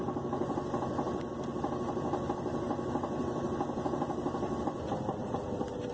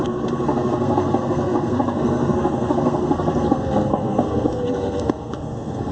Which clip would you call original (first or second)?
first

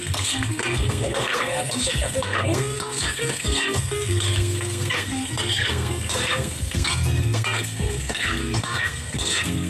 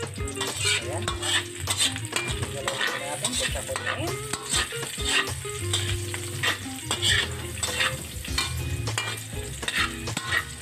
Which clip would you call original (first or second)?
second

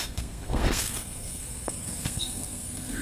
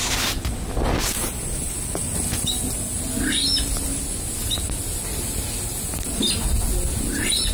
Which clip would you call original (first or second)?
second